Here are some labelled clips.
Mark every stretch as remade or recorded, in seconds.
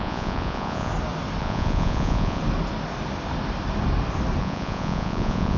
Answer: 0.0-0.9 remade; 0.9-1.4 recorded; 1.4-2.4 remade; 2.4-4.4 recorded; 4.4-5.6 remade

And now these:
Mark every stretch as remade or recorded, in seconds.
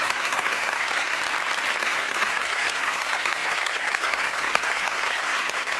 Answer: 0.0-1.2 remade; 1.2-1.8 recorded; 1.8-5.8 remade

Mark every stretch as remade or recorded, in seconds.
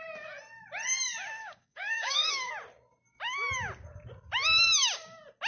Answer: 0.0-1.4 recorded; 1.4-2.5 remade; 2.5-5.5 recorded